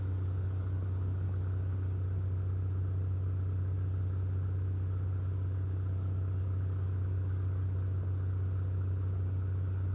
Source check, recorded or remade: recorded